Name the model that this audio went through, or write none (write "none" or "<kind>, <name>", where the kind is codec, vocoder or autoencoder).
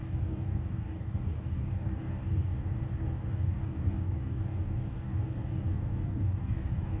codec, DAC